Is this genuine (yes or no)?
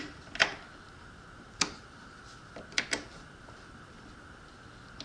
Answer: yes